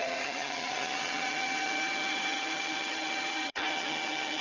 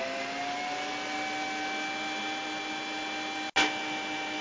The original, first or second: second